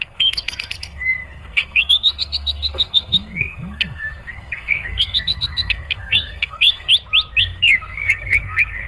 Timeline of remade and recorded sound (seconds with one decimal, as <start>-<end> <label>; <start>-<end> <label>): 0.0-6.9 remade; 6.9-7.4 recorded; 7.4-8.9 remade

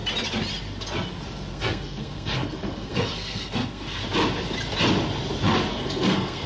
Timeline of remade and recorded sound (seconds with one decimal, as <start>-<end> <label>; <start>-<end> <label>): 0.0-1.5 recorded; 1.5-4.0 remade; 4.0-5.7 recorded; 5.7-6.5 remade

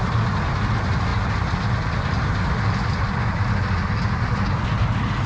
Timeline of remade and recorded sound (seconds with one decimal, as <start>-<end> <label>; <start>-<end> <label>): 0.0-5.3 recorded

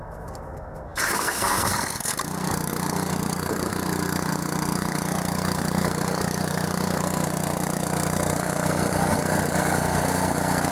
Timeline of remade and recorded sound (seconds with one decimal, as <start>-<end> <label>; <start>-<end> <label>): 0.0-10.7 remade